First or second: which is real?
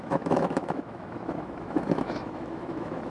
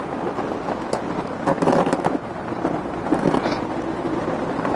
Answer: second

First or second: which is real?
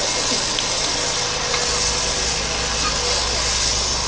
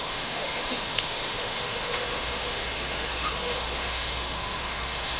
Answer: first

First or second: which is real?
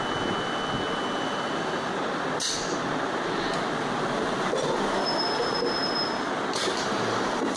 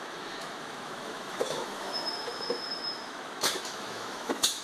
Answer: first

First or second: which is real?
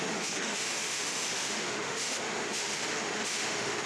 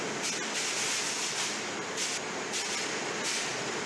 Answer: second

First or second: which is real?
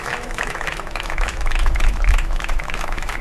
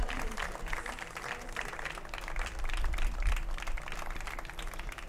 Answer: second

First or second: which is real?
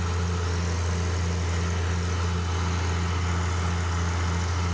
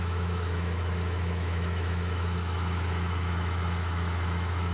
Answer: first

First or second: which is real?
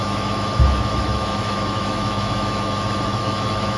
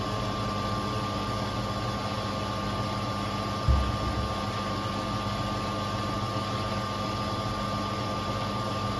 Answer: second